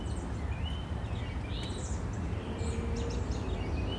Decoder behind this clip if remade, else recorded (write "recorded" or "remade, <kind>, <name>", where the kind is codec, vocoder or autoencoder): recorded